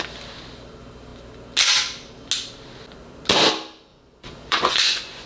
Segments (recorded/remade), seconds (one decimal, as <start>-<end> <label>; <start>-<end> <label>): 0.0-3.9 recorded; 3.9-5.3 remade